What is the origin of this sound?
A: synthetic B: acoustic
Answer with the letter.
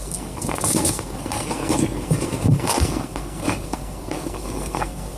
A